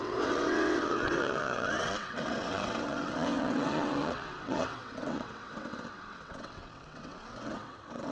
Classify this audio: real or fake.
fake